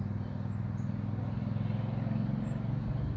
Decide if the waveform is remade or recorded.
recorded